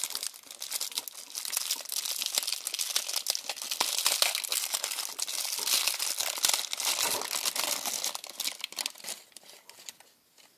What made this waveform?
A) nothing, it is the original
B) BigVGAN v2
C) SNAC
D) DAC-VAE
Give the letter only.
A